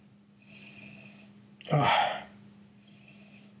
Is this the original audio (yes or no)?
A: yes